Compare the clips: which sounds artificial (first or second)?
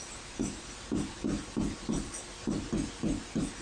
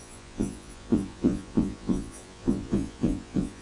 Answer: second